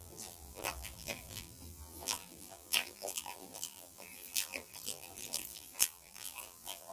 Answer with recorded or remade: remade